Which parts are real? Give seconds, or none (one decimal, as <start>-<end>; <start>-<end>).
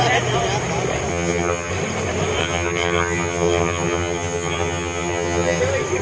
0.0-1.1; 1.7-2.4; 5.6-6.0